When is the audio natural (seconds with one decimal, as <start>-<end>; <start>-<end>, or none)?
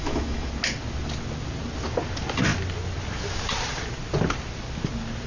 0.5-5.3